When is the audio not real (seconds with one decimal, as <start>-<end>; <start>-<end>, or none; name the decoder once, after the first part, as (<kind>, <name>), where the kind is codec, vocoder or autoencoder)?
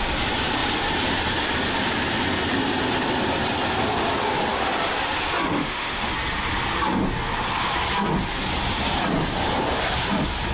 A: 5.6-6.1 (autoencoder, DAC-VAE)